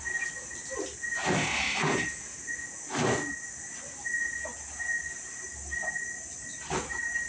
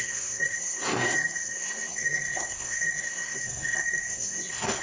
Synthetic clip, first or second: second